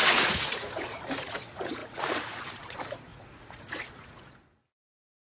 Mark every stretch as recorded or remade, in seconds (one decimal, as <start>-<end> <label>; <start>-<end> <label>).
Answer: 0.0-5.3 remade